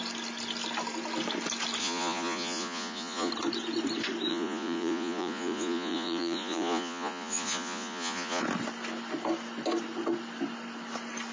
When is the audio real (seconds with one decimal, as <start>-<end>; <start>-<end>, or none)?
0.0-1.8; 3.3-4.3; 8.4-11.3